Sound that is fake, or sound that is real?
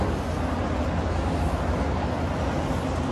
real